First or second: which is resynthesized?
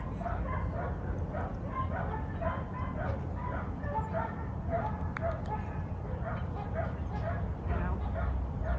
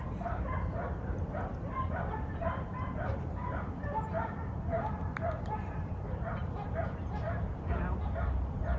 second